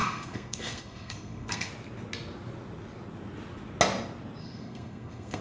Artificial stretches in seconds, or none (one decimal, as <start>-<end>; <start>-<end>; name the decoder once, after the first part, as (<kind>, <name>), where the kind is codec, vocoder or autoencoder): 0.0-1.7 (codec, SNAC); 4.4-5.4